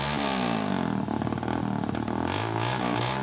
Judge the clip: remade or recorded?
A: recorded